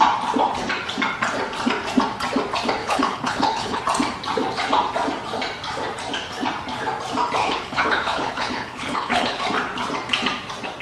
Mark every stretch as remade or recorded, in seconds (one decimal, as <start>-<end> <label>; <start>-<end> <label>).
0.0-2.8 recorded; 2.8-3.8 remade; 3.8-7.4 recorded; 7.4-9.4 remade; 9.4-10.8 recorded